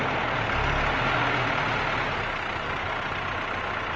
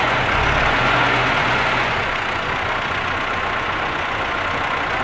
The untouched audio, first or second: first